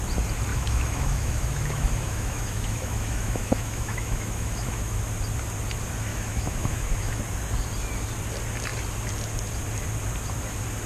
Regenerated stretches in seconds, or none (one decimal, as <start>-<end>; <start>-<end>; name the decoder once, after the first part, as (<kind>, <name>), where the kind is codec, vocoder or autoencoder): 0.5-5.0 (autoencoder, DAC-VAE); 6.1-7.2